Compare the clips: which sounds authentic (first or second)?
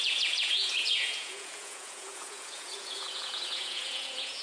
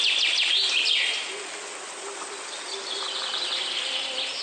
second